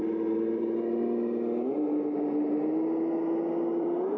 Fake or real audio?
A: real